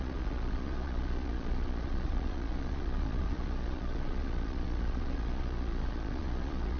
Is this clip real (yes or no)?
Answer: no